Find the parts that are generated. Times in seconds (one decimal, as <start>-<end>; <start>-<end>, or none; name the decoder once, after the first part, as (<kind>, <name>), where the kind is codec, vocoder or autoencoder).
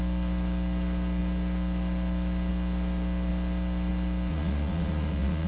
4.3-5.5 (vocoder, Vocos)